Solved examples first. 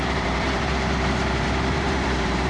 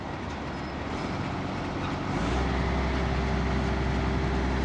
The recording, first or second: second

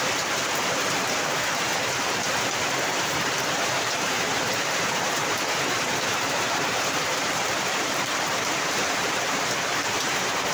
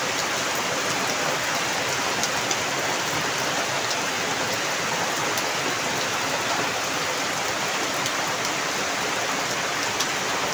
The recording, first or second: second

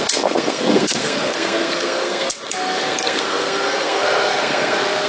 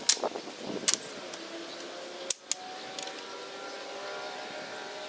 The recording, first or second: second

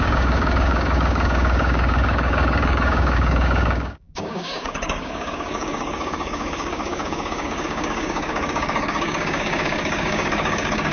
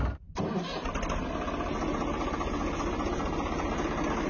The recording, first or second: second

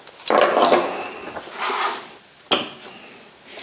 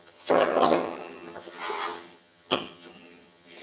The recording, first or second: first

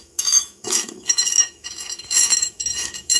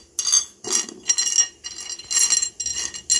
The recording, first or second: second